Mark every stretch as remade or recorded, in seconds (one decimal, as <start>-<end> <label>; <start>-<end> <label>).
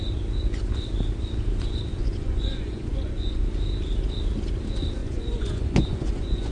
0.0-1.9 recorded; 1.9-3.4 remade; 3.4-5.0 recorded; 5.0-6.5 remade